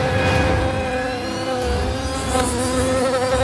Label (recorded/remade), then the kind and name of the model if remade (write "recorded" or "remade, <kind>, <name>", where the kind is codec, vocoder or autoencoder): recorded